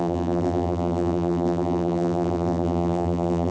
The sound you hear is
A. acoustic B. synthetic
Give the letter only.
B